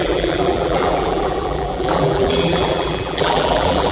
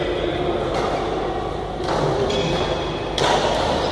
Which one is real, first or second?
second